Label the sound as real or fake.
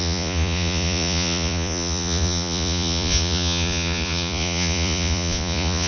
fake